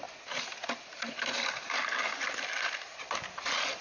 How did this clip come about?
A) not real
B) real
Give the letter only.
B